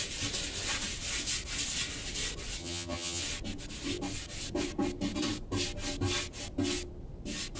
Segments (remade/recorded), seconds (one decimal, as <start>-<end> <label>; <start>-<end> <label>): 0.0-2.6 recorded; 2.6-3.2 remade; 3.2-7.6 recorded